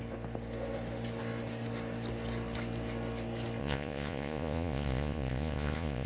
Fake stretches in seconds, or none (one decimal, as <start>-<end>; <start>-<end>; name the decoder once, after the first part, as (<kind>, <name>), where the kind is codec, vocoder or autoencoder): 3.6-6.1 (vocoder, Vocos)

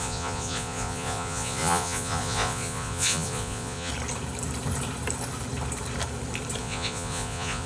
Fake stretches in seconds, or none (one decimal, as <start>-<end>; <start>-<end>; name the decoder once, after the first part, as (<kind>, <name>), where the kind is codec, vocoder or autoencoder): 0.0-3.9 (vocoder, Vocos); 6.6-7.7

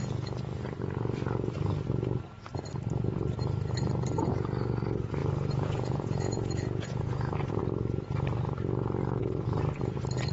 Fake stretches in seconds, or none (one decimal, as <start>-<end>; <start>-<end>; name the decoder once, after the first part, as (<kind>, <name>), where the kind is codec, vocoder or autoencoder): 5.2-7.6 (vocoder, Vocos); 9.2-9.8